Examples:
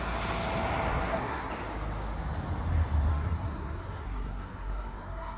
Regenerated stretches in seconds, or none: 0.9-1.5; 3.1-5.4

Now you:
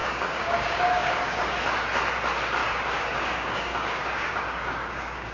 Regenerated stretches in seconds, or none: 0.0-1.6; 2.6-5.3

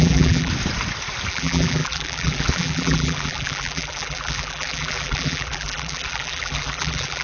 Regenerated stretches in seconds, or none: 0.0-0.5; 1.3-7.2

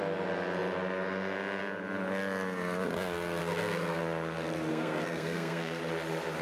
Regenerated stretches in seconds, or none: 3.4-4.0; 4.7-5.8

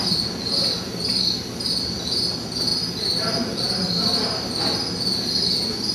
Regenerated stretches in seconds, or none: none

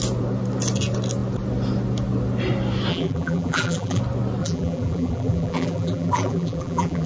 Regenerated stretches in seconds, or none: 2.9-4.0; 4.4-7.1